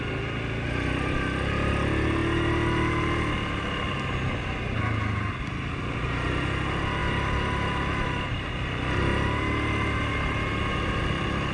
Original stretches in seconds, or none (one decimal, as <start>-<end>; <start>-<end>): 0.0-11.5